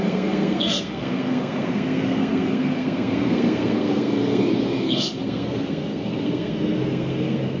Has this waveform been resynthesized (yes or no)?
yes